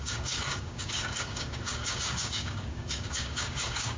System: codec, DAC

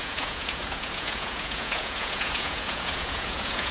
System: vocoder, Vocos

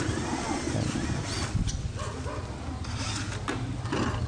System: none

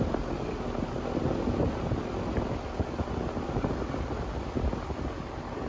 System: none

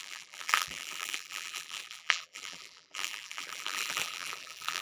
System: vocoder, BigVGAN v2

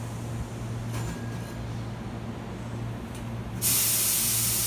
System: none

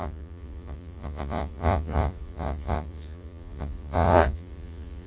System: vocoder, Vocos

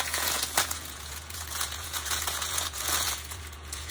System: vocoder, Vocos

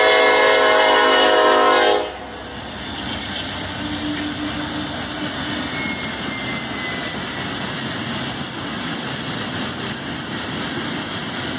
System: none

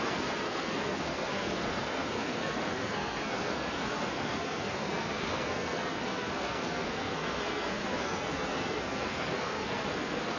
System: codec, SNAC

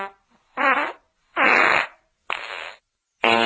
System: none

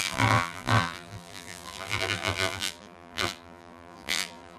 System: vocoder, BigVGAN v2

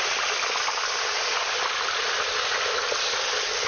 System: none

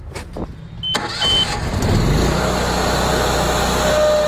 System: none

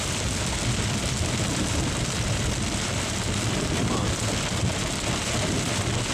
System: vocoder, BigVGAN v2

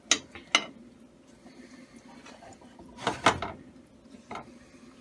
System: none